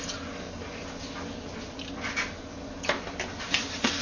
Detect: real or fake real